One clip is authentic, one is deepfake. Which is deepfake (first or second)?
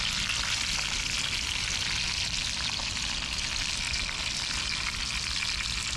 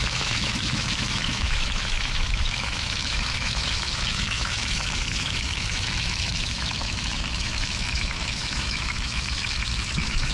second